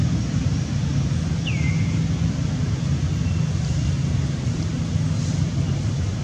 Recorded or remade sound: recorded